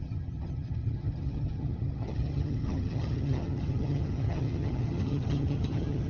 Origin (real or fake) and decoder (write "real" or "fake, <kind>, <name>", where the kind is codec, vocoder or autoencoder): fake, vocoder, HiFi-GAN